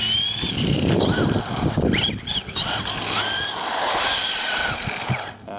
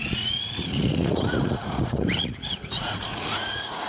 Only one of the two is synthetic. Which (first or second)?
second